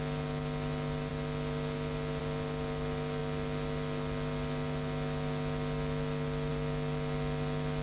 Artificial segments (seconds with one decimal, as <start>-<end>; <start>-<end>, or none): none